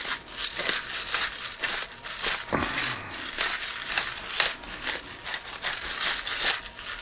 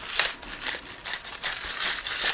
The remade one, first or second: second